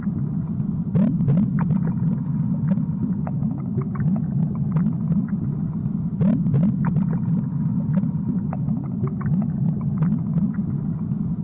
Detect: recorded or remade recorded